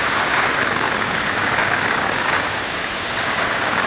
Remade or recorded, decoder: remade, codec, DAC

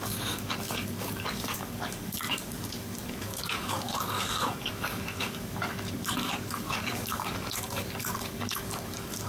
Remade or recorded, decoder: remade, codec, DAC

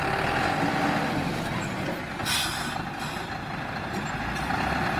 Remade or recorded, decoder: recorded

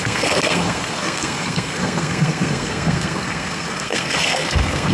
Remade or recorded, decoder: remade, codec, SNAC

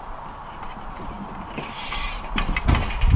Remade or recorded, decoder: remade, vocoder, BigVGAN v2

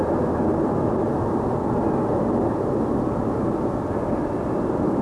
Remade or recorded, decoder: recorded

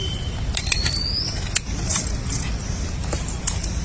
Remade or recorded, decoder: recorded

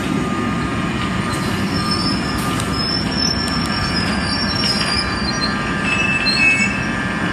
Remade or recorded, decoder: recorded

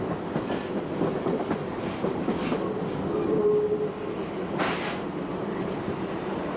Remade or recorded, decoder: recorded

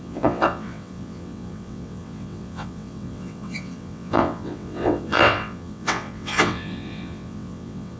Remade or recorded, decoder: remade, vocoder, WaveNeXt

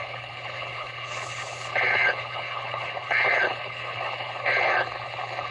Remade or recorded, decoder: remade, codec, HILCodec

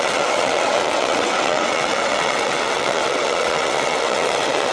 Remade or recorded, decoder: remade, vocoder, WaveNeXt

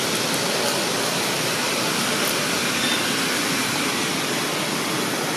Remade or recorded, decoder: recorded